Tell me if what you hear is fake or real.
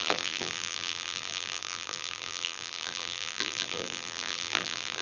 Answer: fake